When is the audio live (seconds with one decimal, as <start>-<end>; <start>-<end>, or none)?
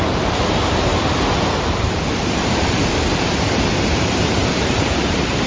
0.9-1.8